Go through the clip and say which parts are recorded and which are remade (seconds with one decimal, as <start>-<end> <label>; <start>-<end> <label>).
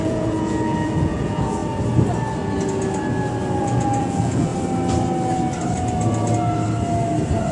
0.0-1.6 remade; 1.6-3.6 recorded; 3.6-4.5 remade; 4.5-7.5 recorded